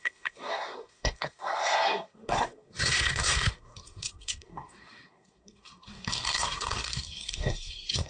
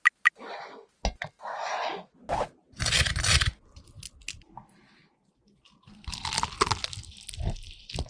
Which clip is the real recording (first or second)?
second